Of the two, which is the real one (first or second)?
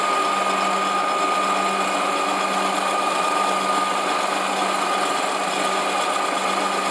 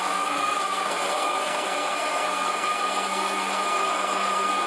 first